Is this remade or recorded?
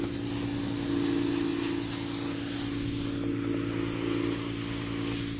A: recorded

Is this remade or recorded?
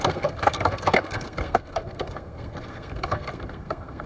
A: remade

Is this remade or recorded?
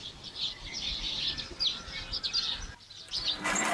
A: recorded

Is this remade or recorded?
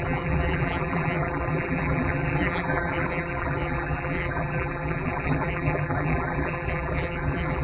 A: remade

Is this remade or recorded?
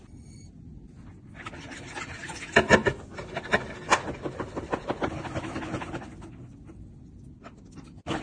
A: recorded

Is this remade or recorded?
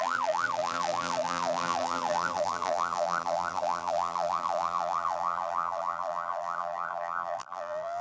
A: remade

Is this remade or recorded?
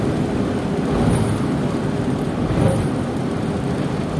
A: recorded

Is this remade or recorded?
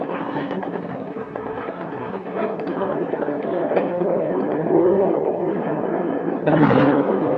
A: remade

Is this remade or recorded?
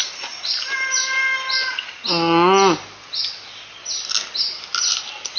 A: recorded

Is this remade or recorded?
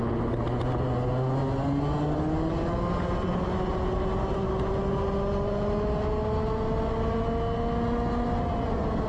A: recorded